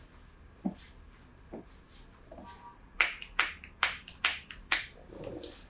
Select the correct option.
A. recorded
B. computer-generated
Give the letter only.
A